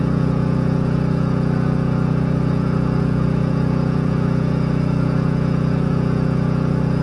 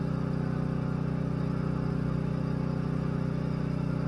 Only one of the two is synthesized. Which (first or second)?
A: first